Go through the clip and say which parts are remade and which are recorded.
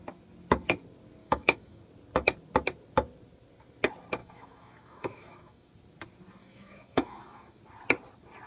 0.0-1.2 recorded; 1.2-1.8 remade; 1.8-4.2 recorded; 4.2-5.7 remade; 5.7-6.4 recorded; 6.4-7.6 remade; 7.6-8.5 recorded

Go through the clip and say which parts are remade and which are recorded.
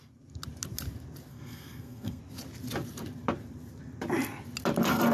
0.0-1.3 recorded; 1.3-2.2 remade; 2.2-5.1 recorded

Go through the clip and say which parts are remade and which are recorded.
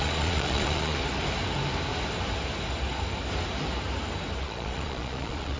0.0-1.0 remade; 1.0-4.4 recorded; 4.4-5.6 remade